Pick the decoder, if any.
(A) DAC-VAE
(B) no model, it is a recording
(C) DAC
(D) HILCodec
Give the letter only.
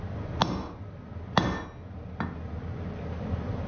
B